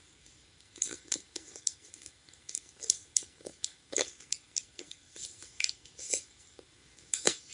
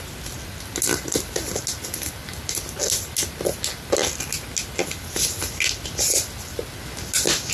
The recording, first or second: second